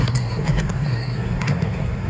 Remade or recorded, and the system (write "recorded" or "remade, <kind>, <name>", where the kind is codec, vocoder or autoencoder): remade, codec, SNAC